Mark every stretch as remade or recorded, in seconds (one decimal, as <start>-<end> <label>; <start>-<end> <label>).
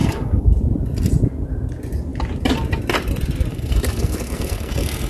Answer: 0.0-0.5 remade; 0.5-3.5 recorded; 3.5-5.1 remade